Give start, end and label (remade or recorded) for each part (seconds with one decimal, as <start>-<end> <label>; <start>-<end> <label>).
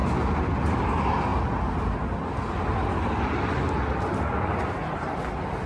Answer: 0.0-5.7 recorded